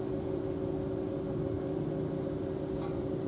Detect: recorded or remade recorded